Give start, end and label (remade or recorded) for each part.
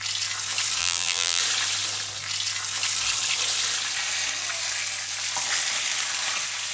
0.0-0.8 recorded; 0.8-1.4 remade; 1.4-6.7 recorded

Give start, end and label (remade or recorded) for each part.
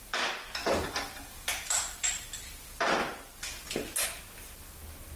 0.0-0.6 recorded; 0.6-3.7 remade; 3.7-5.2 recorded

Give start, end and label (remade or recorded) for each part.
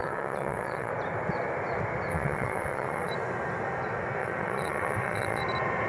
0.0-0.9 remade; 0.9-2.1 recorded; 2.1-3.1 remade; 3.1-4.2 recorded; 4.2-5.4 remade; 5.4-5.9 recorded